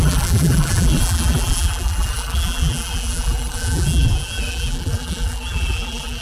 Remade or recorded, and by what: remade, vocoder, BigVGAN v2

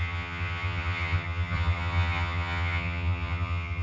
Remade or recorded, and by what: remade, vocoder, HiFi-GAN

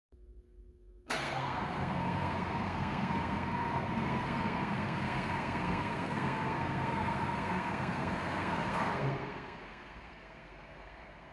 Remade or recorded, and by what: remade, codec, SNAC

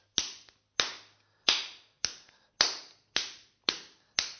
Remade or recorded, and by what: recorded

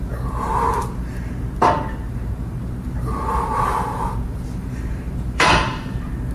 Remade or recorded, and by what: remade, vocoder, BigVGAN v2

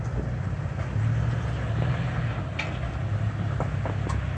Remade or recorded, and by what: recorded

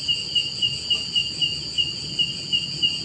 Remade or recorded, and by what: recorded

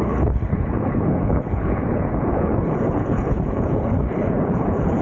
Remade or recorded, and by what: remade, codec, HILCodec